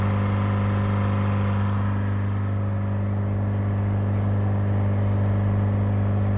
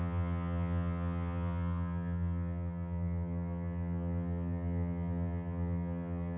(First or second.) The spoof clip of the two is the second